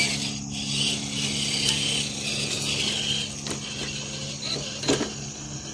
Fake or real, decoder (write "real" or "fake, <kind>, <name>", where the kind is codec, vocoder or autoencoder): real